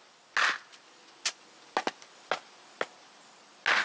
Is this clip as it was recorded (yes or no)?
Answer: yes